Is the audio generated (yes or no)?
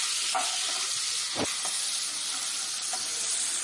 no